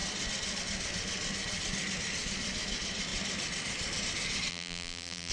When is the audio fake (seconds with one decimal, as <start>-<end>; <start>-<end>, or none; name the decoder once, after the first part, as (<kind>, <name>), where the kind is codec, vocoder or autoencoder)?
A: 4.5-5.3 (vocoder, BigVGAN v2)

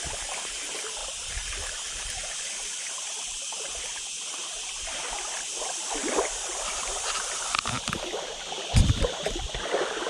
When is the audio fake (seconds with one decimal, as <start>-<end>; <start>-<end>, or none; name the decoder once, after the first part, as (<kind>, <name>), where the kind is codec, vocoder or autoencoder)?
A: none